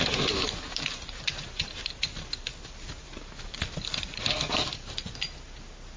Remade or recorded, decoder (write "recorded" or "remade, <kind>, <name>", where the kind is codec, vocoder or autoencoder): recorded